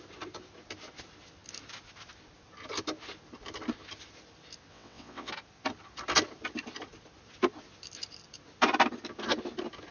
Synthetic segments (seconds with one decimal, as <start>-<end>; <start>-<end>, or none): 4.7-5.3